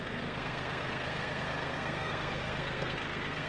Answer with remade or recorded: remade